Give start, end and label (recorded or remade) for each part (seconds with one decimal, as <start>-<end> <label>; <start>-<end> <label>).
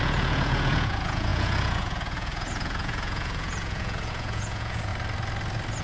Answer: 0.0-4.9 remade; 4.9-5.8 recorded